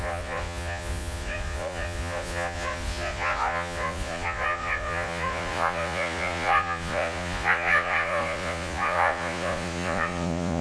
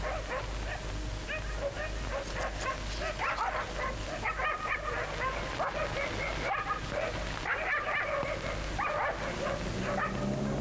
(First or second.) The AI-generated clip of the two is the first